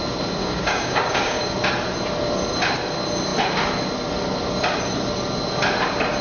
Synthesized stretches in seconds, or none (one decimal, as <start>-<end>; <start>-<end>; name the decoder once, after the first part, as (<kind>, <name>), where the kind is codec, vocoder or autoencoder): 0.4-1.5 (codec, DAC)